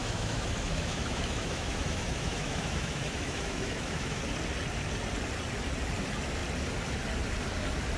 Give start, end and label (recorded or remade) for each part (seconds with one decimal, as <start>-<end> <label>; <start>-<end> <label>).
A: 0.0-4.2 remade; 4.2-8.0 recorded